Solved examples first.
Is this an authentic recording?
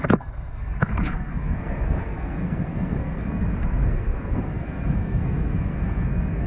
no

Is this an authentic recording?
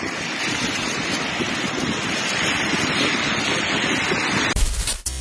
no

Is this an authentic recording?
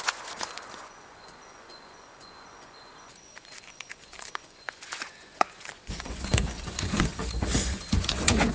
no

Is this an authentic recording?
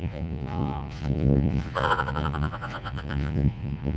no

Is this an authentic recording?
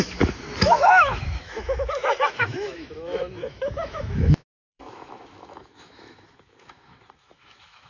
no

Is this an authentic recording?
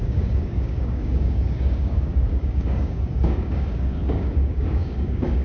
no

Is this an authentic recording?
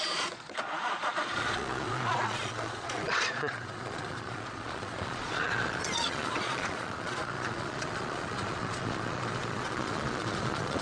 no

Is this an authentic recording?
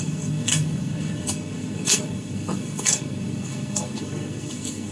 no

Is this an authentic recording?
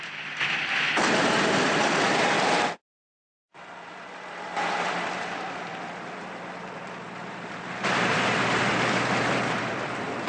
no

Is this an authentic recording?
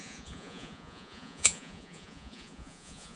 no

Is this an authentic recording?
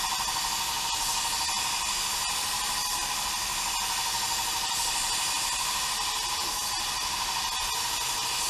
yes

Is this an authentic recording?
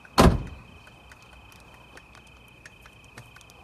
yes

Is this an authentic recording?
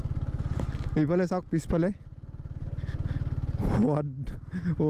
yes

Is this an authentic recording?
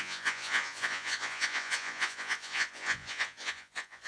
no